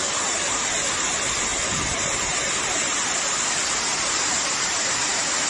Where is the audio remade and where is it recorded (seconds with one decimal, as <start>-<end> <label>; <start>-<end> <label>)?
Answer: 0.0-0.7 remade; 0.7-1.5 recorded; 1.5-2.5 remade; 2.5-3.9 recorded; 3.9-5.5 remade